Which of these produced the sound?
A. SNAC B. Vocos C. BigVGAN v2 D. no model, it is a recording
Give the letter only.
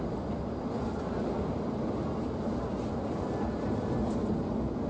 D